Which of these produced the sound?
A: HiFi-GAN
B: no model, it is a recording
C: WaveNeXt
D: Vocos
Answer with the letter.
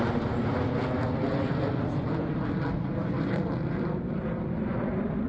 B